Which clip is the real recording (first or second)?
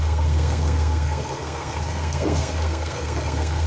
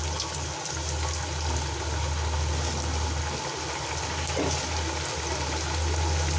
second